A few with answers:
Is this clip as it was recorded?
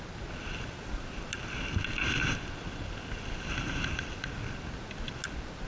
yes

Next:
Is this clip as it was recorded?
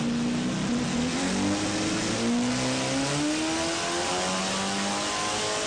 yes